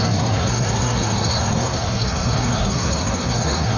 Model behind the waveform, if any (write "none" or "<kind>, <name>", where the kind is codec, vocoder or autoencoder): codec, SNAC